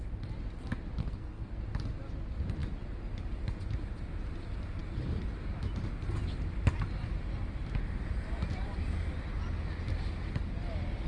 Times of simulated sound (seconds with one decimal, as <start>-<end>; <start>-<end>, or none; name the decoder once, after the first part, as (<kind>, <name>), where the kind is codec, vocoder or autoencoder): 1.0-1.6 (codec, SNAC)